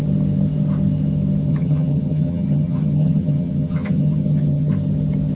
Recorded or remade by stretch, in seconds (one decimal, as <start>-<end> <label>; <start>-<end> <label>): 0.0-1.5 recorded; 1.5-4.7 remade; 4.7-5.3 recorded